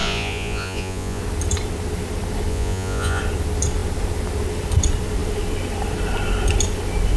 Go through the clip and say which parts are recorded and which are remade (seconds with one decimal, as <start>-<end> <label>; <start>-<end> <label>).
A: 0.0-1.2 remade; 1.2-2.5 recorded; 2.5-3.2 remade; 3.2-7.2 recorded